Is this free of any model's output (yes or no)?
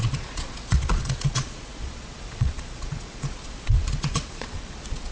no